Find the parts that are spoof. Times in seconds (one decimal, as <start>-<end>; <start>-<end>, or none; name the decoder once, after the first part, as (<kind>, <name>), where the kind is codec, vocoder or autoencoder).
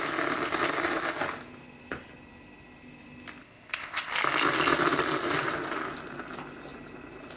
3.4-4.1 (codec, ZipCodec)